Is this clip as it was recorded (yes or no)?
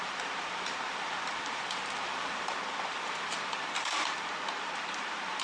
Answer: no